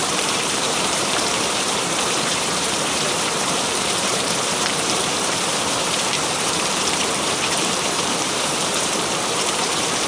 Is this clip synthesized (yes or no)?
yes